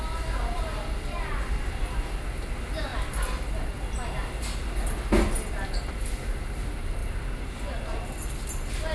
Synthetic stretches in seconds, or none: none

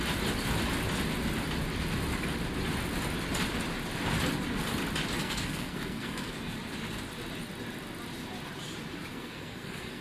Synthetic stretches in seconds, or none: 5.2-6.6 (codec, SNAC); 9.1-10.0

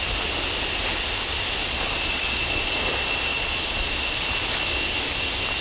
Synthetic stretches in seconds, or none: 1.6-2.8 (vocoder, Vocos); 3.3-4.2

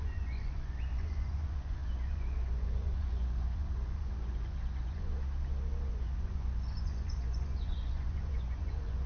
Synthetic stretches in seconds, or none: 0.0-5.1 (vocoder, Vocos); 5.9-9.1

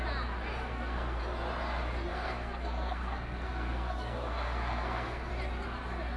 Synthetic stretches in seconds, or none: 0.6-1.2 (codec, SNAC); 2.1-5.3

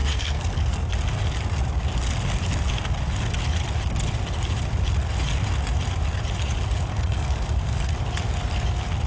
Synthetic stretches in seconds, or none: 0.0-0.9 (codec, SNAC); 6.9-7.9